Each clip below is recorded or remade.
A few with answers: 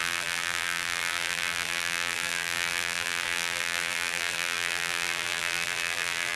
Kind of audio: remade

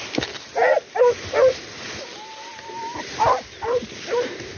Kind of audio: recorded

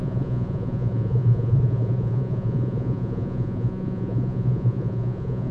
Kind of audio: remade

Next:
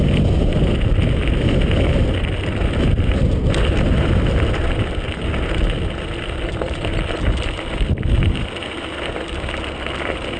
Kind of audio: recorded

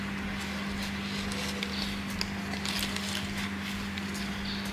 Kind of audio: recorded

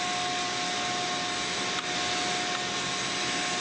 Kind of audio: recorded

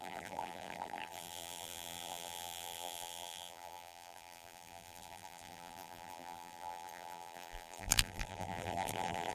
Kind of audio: remade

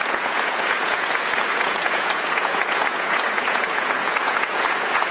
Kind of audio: remade